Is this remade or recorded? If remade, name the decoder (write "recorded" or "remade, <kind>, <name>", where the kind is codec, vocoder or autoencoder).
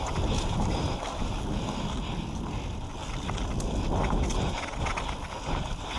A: recorded